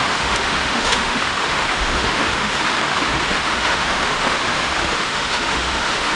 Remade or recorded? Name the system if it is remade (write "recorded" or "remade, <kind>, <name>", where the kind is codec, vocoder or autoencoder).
remade, autoencoder, DAC-VAE